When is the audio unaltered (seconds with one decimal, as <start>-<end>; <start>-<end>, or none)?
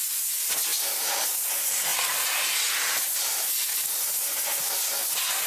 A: 0.0-5.5